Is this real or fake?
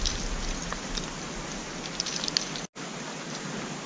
real